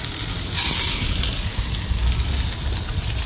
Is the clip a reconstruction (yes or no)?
no